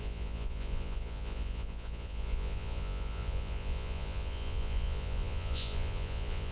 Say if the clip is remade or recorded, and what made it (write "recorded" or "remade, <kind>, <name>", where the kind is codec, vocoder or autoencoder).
remade, vocoder, Vocos